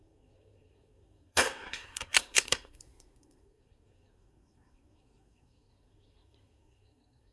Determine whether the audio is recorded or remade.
remade